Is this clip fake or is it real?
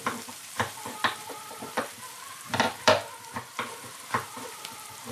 fake